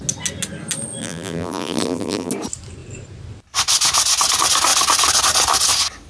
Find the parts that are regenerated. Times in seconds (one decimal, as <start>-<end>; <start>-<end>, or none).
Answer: 1.0-2.3